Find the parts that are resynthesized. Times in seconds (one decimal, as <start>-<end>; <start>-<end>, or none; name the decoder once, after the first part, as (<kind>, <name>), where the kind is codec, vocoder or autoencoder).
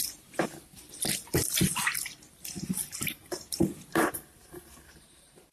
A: 3.2-5.5 (vocoder, BigVGAN v2)